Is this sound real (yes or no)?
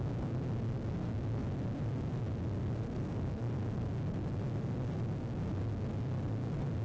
yes